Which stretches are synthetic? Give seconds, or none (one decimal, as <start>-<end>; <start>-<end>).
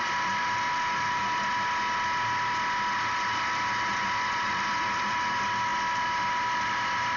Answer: 0.0-1.2; 3.1-7.2